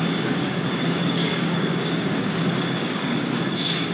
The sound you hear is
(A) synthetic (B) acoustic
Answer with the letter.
A